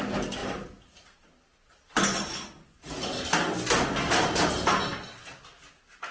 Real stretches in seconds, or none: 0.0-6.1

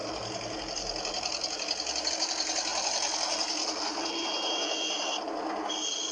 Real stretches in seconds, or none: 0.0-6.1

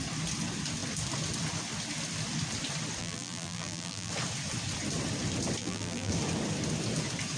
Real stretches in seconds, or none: 0.0-3.0; 4.1-5.6; 6.1-7.4

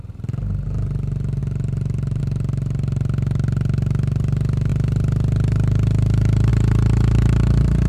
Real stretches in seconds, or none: 0.0-1.4; 2.2-7.9

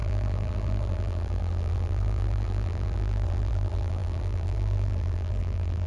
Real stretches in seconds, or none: none

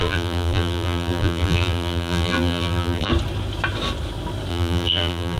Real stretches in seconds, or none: 3.1-4.5